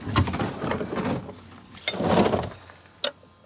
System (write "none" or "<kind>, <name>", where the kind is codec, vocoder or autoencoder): none